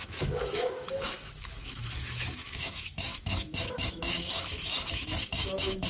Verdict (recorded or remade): remade